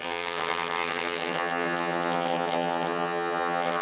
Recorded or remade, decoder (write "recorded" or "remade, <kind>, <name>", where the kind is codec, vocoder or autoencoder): remade, vocoder, HiFi-GAN